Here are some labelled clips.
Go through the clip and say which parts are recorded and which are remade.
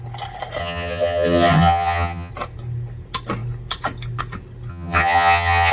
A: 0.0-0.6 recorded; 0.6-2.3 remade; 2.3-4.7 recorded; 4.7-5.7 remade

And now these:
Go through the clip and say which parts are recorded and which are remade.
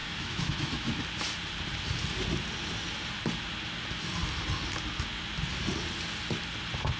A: 0.0-1.0 remade; 1.0-7.0 recorded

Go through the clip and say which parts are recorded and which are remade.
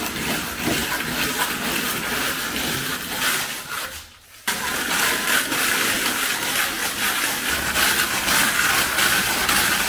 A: 0.0-9.9 recorded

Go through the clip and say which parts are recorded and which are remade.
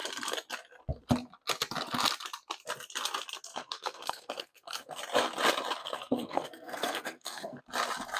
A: 0.0-3.5 recorded; 3.5-5.0 remade; 5.0-5.8 recorded; 5.8-7.6 remade; 7.6-8.2 recorded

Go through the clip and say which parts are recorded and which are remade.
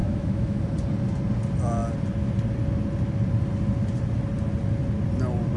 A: 0.0-0.6 remade; 0.6-5.6 recorded